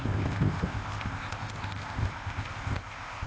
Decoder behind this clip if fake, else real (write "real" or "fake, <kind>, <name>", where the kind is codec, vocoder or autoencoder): fake, codec, ZipCodec